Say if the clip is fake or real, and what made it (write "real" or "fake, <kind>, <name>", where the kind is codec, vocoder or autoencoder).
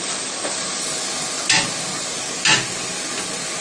real